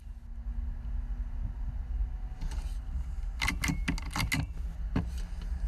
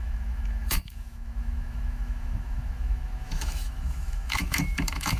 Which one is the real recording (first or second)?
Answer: first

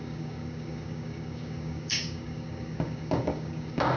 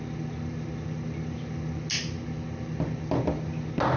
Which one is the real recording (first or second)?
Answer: second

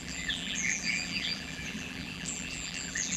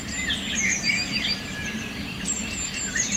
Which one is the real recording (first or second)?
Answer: second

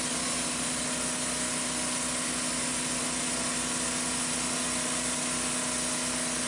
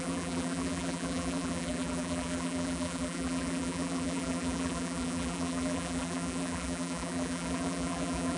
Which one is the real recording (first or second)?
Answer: first